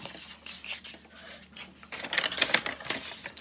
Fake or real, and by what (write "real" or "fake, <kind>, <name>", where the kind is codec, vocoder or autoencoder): real